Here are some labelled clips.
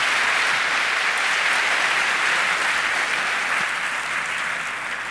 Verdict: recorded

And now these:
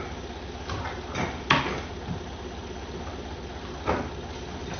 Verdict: recorded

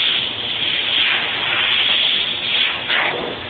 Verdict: recorded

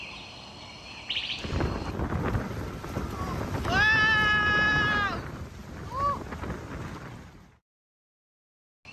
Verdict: recorded